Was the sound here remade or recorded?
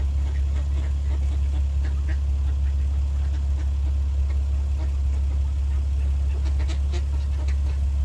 recorded